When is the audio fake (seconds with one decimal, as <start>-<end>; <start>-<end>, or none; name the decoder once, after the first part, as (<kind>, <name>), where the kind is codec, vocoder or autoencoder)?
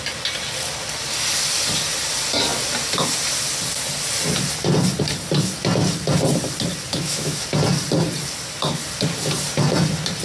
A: 6.9-7.4 (autoencoder, DAC-VAE)